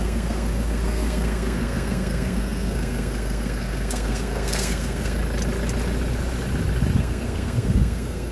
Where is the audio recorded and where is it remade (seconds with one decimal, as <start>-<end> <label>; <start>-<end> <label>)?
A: 0.0-5.2 remade; 5.2-7.0 recorded; 7.0-8.3 remade